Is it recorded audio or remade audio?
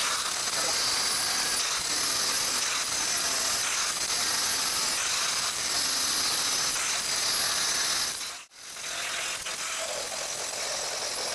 recorded